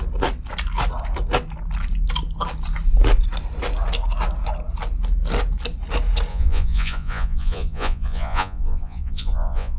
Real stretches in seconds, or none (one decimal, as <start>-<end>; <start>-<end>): 0.0-6.3